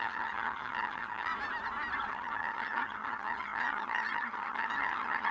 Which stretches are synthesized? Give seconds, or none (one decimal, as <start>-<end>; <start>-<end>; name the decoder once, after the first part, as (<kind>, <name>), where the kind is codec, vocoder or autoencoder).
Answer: 0.0-1.3 (vocoder, HiFi-GAN); 2.1-5.3